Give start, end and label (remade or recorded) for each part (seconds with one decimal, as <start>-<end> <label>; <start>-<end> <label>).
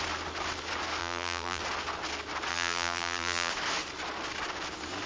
0.0-1.0 recorded; 1.0-1.6 remade; 1.6-2.5 recorded; 2.5-3.5 remade; 3.5-5.1 recorded